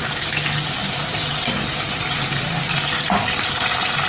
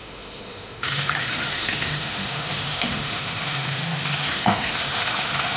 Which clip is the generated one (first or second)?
second